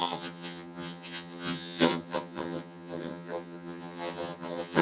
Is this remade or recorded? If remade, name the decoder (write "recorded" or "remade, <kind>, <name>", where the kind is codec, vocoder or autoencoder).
remade, vocoder, HiFi-GAN